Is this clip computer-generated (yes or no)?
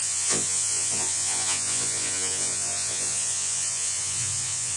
yes